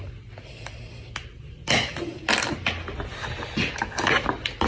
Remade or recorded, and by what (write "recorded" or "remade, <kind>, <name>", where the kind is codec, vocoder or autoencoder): recorded